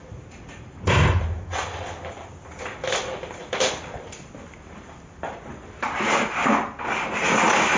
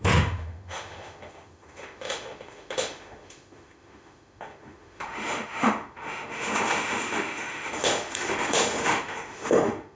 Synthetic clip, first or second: second